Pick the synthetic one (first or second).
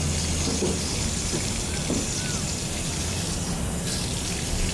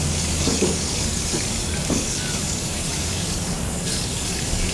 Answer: second